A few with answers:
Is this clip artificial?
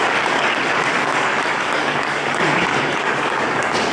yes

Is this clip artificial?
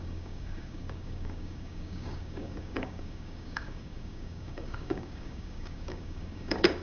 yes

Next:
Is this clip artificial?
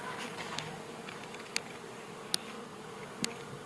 yes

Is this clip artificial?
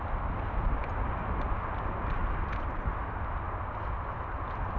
no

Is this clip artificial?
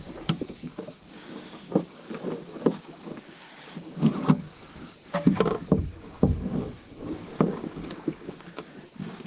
yes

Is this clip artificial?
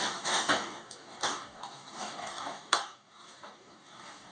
yes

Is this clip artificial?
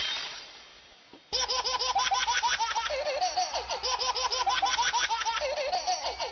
no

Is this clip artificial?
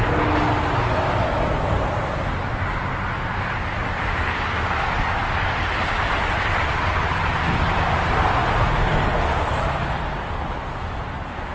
no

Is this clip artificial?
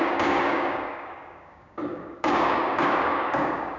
yes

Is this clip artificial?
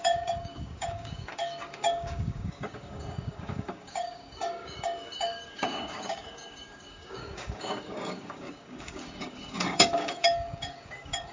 yes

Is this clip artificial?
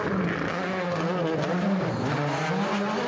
no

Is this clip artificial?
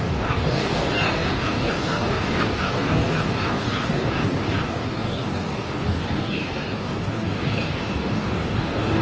yes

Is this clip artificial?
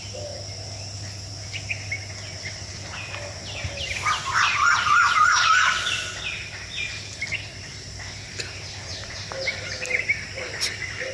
no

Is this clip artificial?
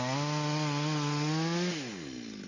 no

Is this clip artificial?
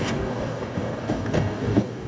yes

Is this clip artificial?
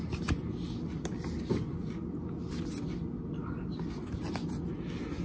no